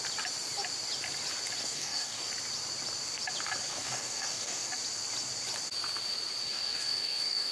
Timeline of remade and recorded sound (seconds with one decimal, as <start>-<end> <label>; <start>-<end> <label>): 0.0-1.6 recorded; 1.6-2.3 remade; 2.3-3.7 recorded; 3.7-4.7 remade; 4.7-6.4 recorded; 6.4-7.5 remade